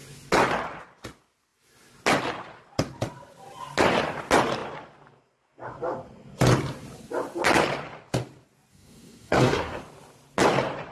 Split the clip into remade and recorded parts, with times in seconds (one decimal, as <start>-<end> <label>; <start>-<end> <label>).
0.0-8.7 recorded; 8.7-9.8 remade; 9.8-10.9 recorded